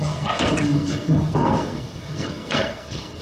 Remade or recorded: remade